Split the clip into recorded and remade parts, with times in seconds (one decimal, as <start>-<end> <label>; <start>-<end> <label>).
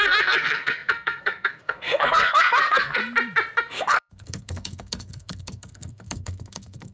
0.0-3.0 remade; 3.0-3.6 recorded; 3.6-6.9 remade